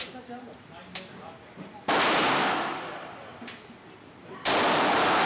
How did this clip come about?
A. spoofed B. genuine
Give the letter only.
B